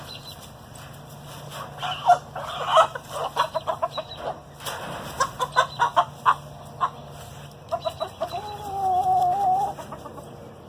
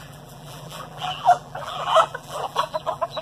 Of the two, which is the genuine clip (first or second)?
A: first